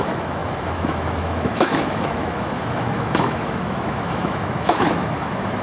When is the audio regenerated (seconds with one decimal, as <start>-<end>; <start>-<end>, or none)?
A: 0.0-5.6

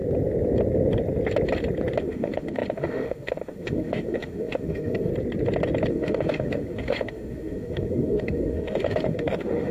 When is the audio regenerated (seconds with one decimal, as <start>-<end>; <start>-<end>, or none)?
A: 2.0-5.1; 5.9-9.7